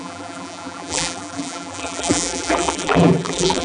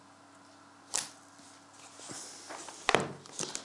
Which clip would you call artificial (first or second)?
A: first